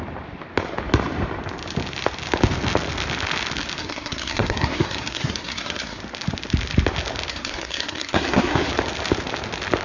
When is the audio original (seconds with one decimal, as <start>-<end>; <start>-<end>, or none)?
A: 0.0-3.8; 6.0-7.3; 8.7-9.8